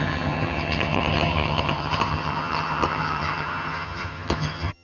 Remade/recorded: remade